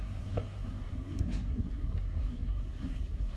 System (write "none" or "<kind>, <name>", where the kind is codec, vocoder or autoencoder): codec, SNAC